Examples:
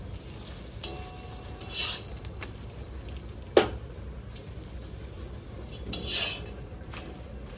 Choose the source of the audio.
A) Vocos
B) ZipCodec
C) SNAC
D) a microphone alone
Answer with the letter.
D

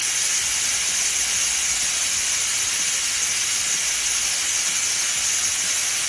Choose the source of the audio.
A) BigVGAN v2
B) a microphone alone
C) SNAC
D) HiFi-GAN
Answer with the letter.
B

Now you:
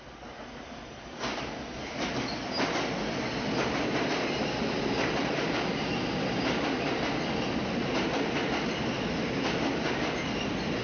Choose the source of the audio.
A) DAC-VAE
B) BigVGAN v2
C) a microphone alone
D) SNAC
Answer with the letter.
C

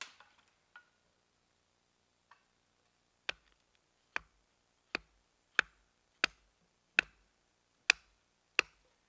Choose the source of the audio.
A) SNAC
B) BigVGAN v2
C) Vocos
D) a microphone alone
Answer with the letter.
D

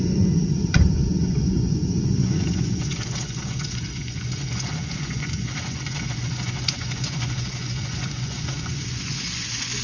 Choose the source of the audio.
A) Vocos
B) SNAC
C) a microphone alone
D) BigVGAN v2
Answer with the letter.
A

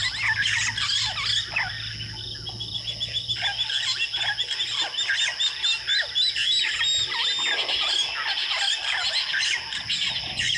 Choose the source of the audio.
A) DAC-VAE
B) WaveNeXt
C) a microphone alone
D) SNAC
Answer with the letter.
C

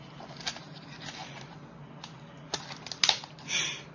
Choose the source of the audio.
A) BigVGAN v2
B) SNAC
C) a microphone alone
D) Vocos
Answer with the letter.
C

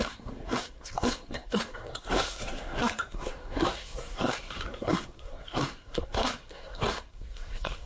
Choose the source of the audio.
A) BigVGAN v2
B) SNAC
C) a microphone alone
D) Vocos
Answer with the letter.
B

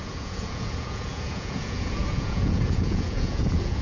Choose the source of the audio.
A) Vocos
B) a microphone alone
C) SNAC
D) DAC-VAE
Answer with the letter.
A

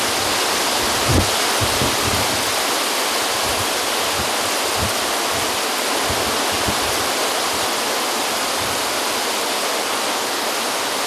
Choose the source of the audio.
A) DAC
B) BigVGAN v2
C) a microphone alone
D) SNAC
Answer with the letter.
C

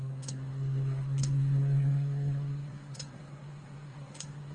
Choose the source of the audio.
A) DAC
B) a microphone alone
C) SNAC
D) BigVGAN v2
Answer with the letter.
C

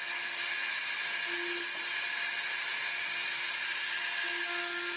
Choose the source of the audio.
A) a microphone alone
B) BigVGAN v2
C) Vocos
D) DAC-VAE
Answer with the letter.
A